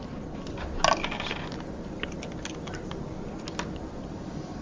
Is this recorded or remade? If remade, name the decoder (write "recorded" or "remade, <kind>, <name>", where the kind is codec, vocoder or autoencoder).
recorded